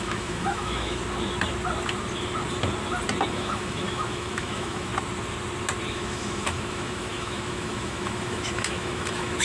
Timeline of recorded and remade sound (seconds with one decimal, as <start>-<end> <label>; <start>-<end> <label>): 0.0-1.0 remade; 1.0-3.3 recorded; 3.3-4.9 remade; 4.9-5.9 recorded; 5.9-9.4 remade